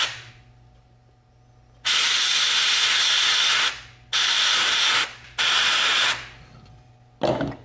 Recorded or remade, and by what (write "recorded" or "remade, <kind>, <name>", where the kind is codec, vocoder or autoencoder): recorded